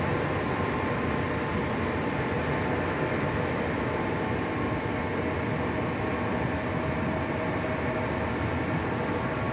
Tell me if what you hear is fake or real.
real